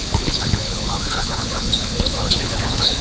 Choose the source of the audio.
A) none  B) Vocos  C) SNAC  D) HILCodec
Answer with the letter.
D